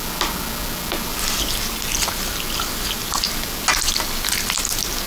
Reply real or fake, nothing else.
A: real